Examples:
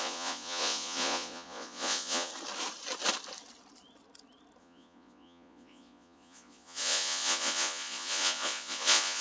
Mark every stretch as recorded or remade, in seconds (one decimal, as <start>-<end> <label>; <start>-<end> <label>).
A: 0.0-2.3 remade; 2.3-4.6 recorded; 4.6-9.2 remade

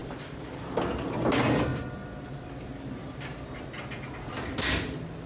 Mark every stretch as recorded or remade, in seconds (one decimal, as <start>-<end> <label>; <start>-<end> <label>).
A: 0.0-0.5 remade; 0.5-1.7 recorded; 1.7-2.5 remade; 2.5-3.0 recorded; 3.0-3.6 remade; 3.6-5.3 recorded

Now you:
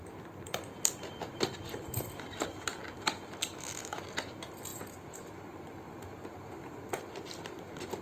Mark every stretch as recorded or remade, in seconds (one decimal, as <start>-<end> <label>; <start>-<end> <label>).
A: 0.0-3.5 recorded; 3.5-4.0 remade; 4.0-8.0 recorded

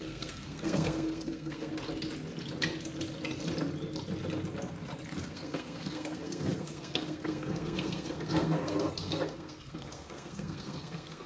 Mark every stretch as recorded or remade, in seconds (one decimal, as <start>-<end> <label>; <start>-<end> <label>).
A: 0.0-1.7 remade; 1.7-5.2 recorded; 5.2-11.3 remade

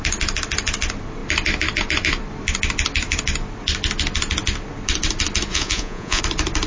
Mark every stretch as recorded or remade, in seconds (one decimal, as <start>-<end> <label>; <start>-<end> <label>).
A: 0.0-5.5 recorded; 5.5-6.2 remade; 6.2-6.7 recorded

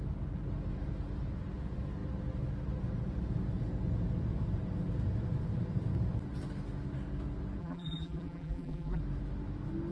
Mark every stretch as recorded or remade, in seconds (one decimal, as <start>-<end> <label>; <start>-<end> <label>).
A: 0.0-7.6 recorded; 7.6-9.0 remade; 9.0-9.9 recorded